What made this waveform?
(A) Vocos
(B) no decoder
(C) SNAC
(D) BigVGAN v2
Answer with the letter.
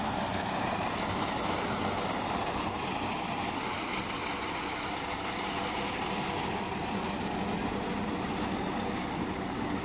B